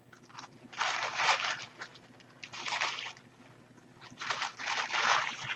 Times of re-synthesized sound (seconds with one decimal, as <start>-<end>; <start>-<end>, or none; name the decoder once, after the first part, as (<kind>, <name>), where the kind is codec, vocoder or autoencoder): none